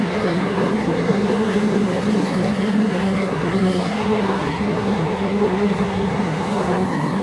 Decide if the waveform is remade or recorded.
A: remade